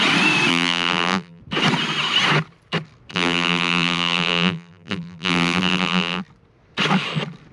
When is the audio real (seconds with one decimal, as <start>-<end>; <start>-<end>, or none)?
0.0-0.5; 1.4-3.1; 6.2-7.5